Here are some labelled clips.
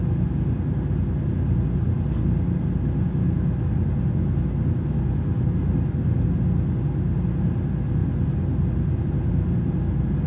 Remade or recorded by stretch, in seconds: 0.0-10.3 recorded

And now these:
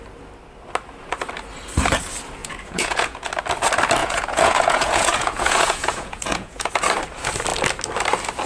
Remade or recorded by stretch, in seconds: 0.0-2.4 recorded; 2.4-3.3 remade; 3.3-4.0 recorded; 4.0-6.7 remade; 6.7-8.5 recorded

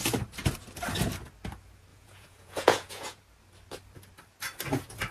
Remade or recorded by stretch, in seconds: 0.0-1.9 recorded; 1.9-3.2 remade; 3.2-5.1 recorded